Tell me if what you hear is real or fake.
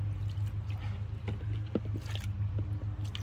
real